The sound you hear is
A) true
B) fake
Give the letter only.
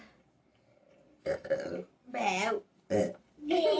A